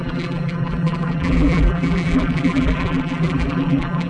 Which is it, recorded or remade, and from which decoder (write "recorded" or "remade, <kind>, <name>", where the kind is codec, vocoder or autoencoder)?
remade, vocoder, BigVGAN v2